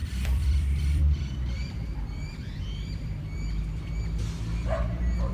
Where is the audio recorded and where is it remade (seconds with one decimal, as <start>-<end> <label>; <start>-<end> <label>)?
0.0-3.2 remade; 3.2-5.3 recorded